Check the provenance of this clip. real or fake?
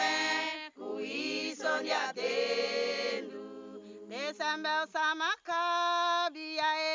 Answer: real